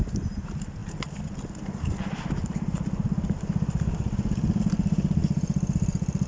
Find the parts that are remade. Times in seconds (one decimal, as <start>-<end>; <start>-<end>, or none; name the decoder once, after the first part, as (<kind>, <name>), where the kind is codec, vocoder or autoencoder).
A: none